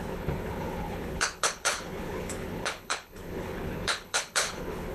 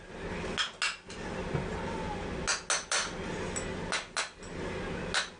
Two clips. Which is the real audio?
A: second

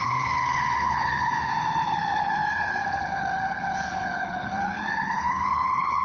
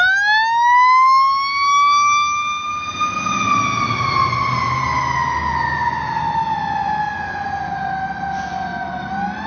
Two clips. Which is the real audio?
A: second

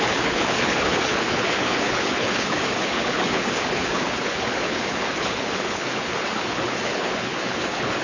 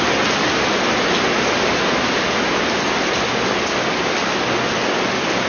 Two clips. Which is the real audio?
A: second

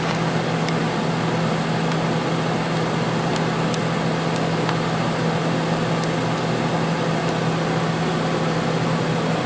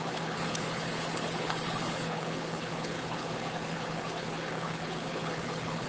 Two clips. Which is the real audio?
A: first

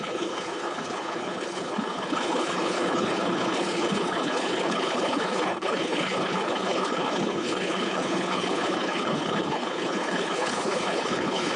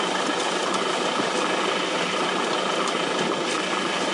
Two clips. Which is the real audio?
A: second